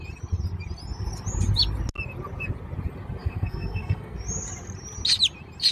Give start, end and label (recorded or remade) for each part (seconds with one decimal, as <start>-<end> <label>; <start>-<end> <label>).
0.0-3.2 recorded; 3.2-4.2 remade; 4.2-5.7 recorded